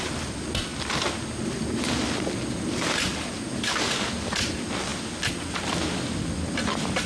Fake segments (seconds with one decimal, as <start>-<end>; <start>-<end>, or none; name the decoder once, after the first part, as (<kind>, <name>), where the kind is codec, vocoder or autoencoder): none